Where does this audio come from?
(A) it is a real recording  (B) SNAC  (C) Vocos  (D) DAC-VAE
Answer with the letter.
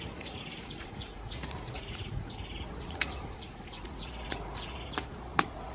C